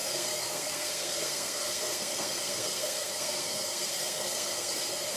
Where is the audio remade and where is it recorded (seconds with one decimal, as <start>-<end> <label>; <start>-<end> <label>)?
0.0-5.2 remade